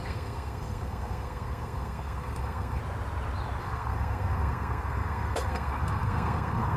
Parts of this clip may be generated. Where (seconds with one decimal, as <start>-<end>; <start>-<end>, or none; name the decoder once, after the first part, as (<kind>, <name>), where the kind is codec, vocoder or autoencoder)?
0.0-2.8 (codec, SNAC); 3.6-6.8